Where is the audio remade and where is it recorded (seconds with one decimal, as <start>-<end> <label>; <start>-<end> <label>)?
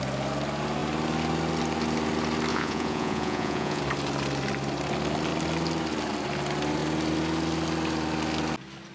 0.0-2.5 recorded; 2.5-3.8 remade; 3.8-8.9 recorded